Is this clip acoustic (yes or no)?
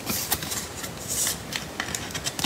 yes